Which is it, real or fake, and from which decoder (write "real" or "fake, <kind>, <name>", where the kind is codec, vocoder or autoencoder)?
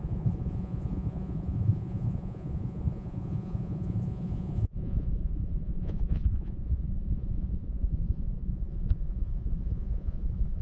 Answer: fake, vocoder, Vocos